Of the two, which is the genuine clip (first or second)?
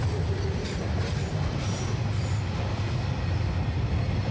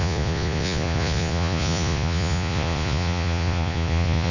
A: first